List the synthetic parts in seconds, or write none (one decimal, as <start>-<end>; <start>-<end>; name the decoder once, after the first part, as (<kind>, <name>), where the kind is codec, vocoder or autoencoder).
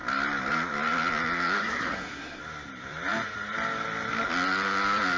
1.6-2.4 (codec, SNAC)